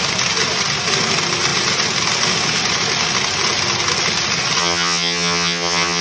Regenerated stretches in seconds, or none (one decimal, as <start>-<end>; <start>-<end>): 4.6-6.0